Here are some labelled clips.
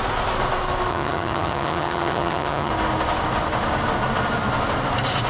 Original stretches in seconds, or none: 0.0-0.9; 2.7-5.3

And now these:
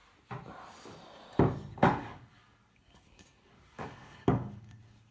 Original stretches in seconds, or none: 0.0-1.7

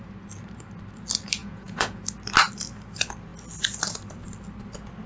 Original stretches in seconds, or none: 0.0-1.4; 2.0-5.1

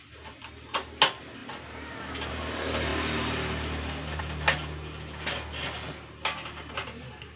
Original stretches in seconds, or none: 0.0-7.4

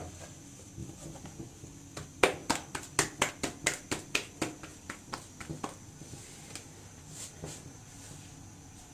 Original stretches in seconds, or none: 0.0-8.9

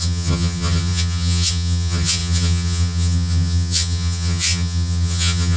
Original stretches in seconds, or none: none

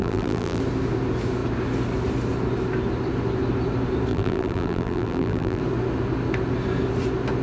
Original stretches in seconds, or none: 0.6-4.1; 5.6-7.4